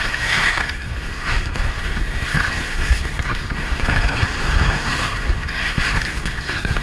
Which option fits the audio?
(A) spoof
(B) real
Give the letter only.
A